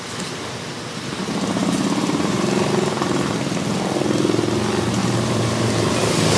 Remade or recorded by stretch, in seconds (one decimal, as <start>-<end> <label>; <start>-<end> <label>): 0.0-1.5 recorded; 1.5-2.7 remade; 2.7-5.0 recorded; 5.0-5.7 remade; 5.7-6.4 recorded